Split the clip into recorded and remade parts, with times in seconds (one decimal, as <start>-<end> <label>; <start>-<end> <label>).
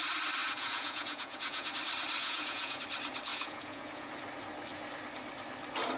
0.0-0.4 recorded; 0.4-1.7 remade; 1.7-2.2 recorded; 2.2-2.8 remade; 2.8-3.3 recorded; 3.3-4.1 remade; 4.1-6.0 recorded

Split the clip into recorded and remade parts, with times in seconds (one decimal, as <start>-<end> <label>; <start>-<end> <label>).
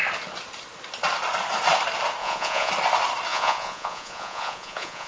0.0-2.2 recorded; 2.2-2.7 remade; 2.7-3.3 recorded; 3.3-5.1 remade